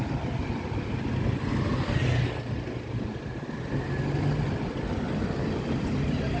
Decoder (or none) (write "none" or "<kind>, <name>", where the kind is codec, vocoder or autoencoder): none